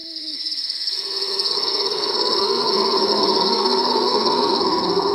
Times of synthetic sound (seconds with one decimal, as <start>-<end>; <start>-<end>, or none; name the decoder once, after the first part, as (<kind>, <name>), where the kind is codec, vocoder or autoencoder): 0.0-5.1 (codec, SNAC)

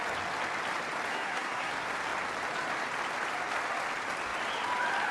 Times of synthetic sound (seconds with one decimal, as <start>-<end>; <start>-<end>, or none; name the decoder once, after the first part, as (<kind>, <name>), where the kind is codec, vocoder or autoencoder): 1.1-1.7 (codec, SNAC)

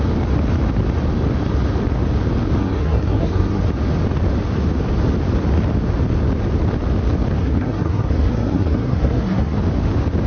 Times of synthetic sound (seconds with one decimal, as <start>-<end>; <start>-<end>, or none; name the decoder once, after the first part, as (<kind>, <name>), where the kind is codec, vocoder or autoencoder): 2.6-3.6 (codec, SNAC); 7.4-9.6

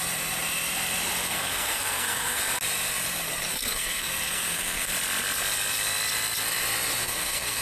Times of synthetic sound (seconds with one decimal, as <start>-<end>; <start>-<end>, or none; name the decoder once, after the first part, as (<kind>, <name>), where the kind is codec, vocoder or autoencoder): 1.2-2.4 (codec, SNAC); 3.5-4.9; 7.0-7.6

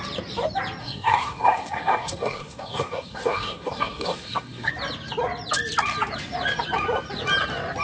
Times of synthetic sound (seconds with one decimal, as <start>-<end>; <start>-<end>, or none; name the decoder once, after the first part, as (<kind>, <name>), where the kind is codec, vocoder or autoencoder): 0.8-4.7 (codec, SNAC)